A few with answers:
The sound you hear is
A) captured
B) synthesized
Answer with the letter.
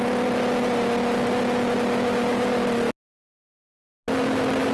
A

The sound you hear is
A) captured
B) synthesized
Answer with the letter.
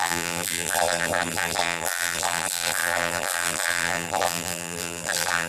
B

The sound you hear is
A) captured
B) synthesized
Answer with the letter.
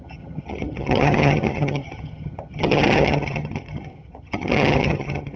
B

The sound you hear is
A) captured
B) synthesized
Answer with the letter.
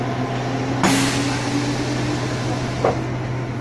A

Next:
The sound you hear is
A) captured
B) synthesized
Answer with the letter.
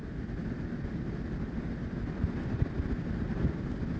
A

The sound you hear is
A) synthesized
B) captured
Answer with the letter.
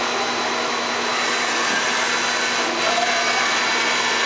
B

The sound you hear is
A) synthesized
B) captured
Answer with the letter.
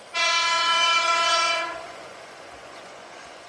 A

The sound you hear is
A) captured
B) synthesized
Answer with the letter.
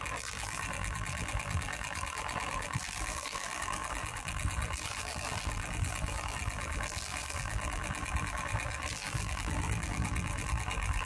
B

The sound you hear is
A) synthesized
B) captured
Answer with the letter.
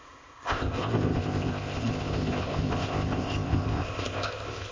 A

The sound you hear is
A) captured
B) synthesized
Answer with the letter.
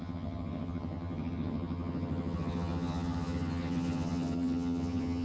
B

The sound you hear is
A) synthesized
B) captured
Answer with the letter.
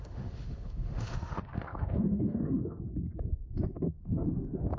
A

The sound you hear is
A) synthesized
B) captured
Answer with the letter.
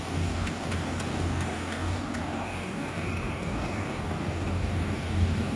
A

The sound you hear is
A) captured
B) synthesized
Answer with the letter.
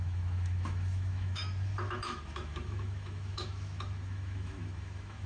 B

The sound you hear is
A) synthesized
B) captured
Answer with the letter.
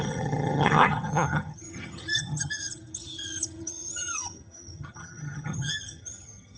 A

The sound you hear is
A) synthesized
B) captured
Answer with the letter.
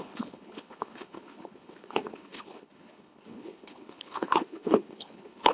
A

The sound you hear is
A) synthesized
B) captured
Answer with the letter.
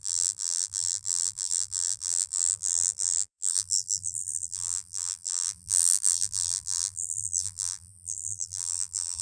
A